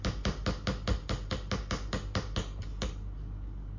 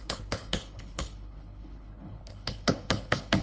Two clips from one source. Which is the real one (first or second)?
first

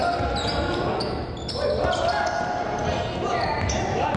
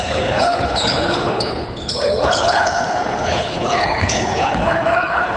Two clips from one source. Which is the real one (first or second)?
first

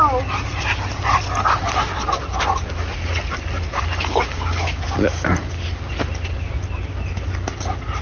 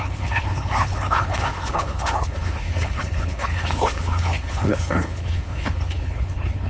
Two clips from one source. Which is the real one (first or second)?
first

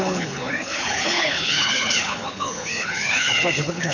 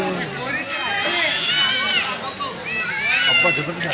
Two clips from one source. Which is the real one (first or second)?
second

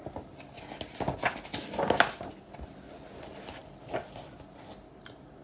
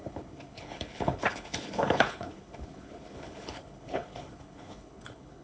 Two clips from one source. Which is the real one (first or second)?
first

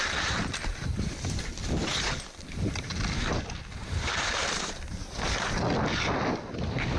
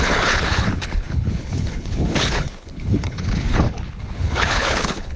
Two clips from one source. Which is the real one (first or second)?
first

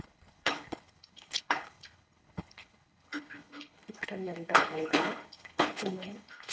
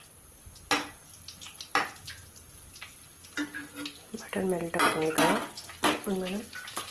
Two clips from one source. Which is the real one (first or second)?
second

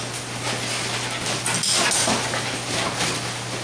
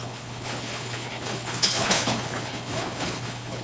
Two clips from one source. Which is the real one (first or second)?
first